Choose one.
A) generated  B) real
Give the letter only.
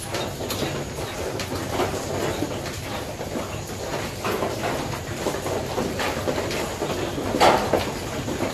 B